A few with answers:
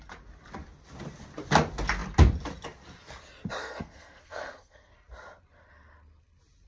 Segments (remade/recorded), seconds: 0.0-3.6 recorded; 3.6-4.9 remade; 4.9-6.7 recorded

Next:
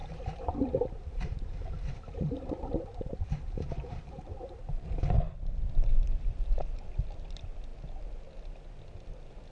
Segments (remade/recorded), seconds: 0.0-5.2 remade; 5.2-5.9 recorded; 5.9-6.6 remade; 6.6-9.5 recorded

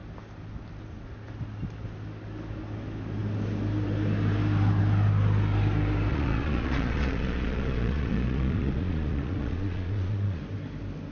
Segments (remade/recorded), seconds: 0.0-6.1 recorded; 6.1-10.4 remade; 10.4-11.1 recorded

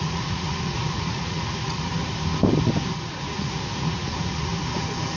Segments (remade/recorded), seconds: 0.0-1.9 remade; 1.9-3.1 recorded; 3.1-4.5 remade; 4.5-5.2 recorded